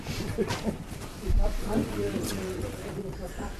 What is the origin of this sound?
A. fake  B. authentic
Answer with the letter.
A